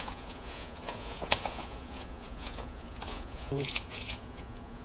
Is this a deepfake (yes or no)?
yes